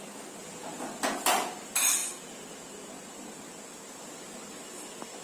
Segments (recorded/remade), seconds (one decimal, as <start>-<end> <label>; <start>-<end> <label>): 0.0-5.2 recorded